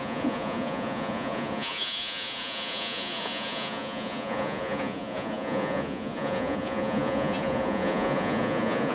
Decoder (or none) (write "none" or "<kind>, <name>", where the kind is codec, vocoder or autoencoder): vocoder, Vocos